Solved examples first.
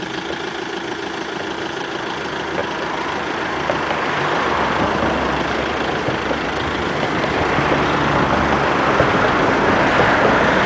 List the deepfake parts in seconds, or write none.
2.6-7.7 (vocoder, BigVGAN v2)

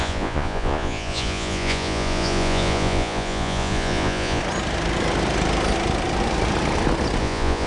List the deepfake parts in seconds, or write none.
0.0-4.4 (vocoder, Vocos); 7.2-7.7